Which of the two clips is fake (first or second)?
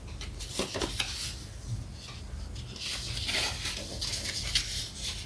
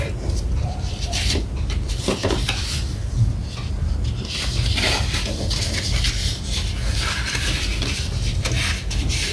second